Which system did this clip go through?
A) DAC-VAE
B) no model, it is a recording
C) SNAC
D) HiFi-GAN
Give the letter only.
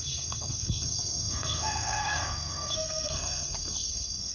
C